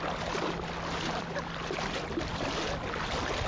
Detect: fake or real real